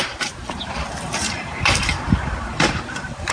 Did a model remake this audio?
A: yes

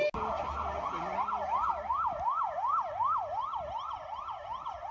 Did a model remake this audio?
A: no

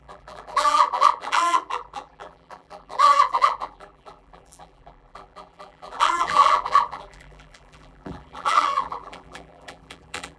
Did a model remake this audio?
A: yes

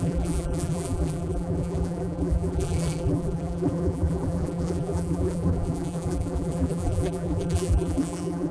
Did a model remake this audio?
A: yes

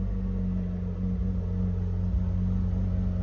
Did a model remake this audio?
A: no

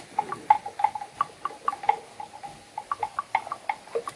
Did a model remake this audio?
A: no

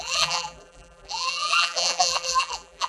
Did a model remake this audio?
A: yes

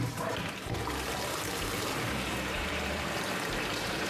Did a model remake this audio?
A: yes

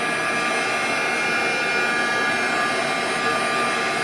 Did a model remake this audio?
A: no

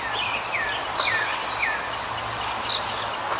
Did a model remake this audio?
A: no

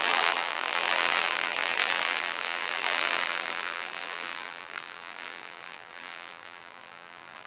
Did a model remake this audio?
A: yes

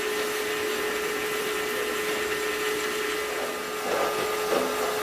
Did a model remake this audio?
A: no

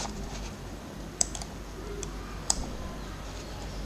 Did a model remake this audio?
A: yes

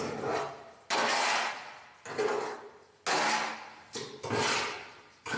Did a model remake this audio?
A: no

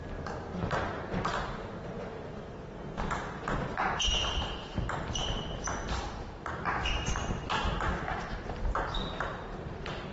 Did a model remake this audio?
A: yes